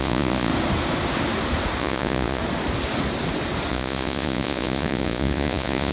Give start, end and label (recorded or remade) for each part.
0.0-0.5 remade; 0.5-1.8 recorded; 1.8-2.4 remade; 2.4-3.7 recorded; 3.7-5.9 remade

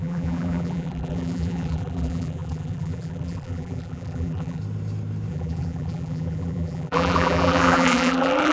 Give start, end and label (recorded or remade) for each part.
0.0-4.6 remade; 4.6-5.3 recorded; 5.3-8.5 remade

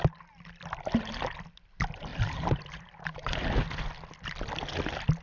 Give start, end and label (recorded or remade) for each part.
0.0-2.1 recorded; 2.1-3.5 remade; 3.5-5.2 recorded

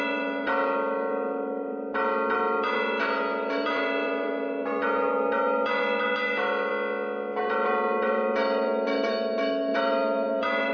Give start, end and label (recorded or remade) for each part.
0.0-6.7 remade; 6.7-7.4 recorded; 7.4-10.7 remade

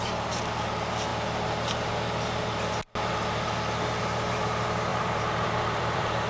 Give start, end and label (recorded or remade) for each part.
0.0-4.9 recorded; 4.9-6.3 remade

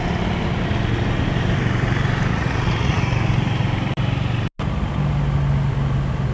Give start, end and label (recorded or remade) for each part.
0.0-2.3 recorded; 2.3-3.0 remade; 3.0-6.3 recorded